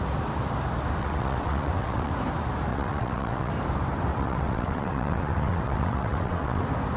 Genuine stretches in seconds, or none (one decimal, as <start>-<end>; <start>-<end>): 0.0-1.0; 2.1-2.7; 3.5-4.1; 6.6-7.0